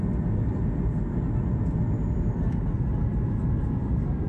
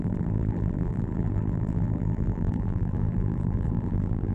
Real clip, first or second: first